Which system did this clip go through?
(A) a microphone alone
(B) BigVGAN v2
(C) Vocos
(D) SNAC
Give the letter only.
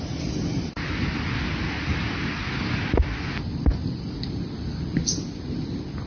A